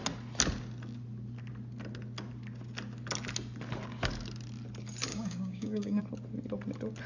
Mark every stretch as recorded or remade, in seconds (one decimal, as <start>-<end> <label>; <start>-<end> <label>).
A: 0.0-5.1 recorded; 5.1-6.0 remade; 6.0-7.1 recorded